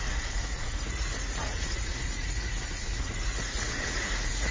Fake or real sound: fake